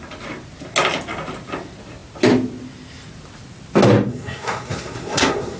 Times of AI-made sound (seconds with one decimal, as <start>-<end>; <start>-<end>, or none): 4.1-5.6